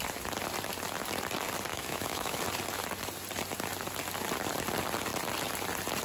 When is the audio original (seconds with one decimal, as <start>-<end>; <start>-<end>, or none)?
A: 0.0-1.7; 2.4-6.0